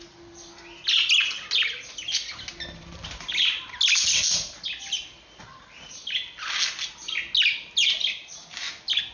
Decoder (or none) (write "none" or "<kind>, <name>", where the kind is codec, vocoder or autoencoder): none